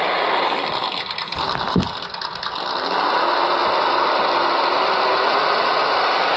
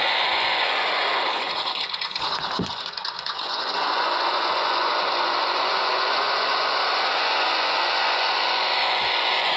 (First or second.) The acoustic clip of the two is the first